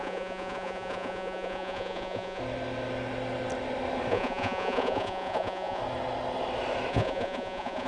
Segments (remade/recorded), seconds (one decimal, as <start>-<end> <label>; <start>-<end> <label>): 0.0-2.4 remade; 2.4-4.1 recorded; 4.1-5.8 remade; 5.8-6.9 recorded; 6.9-7.9 remade